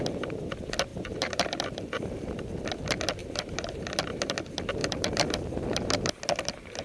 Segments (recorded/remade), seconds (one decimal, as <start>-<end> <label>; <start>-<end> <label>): 0.0-0.9 recorded; 0.9-2.3 remade; 2.3-3.2 recorded; 3.2-3.7 remade; 3.7-4.8 recorded; 4.8-6.1 remade; 6.1-6.8 recorded

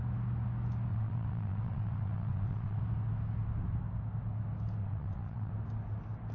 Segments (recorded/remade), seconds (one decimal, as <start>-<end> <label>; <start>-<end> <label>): 0.0-0.9 recorded; 0.9-2.8 remade; 2.8-4.8 recorded; 4.8-5.5 remade; 5.5-6.3 recorded

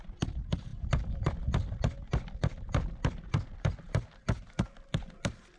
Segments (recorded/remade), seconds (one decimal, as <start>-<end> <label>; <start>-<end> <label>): 0.0-0.7 recorded; 0.7-1.3 remade; 1.3-5.6 recorded

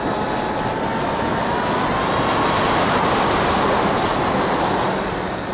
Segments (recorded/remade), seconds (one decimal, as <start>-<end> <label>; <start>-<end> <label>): 0.0-5.5 recorded

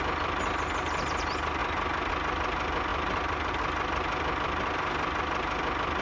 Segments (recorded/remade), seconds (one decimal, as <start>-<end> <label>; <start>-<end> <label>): 0.0-6.0 recorded

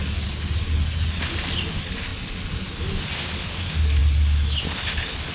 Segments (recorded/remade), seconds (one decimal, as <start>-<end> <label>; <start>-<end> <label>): 0.0-5.3 recorded

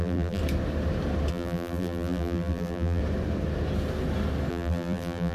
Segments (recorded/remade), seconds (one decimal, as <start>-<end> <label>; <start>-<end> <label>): 0.0-0.4 remade; 0.4-1.3 recorded; 1.3-3.0 remade; 3.0-4.5 recorded; 4.5-5.3 remade